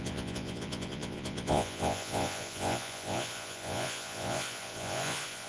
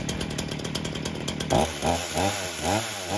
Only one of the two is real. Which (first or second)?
second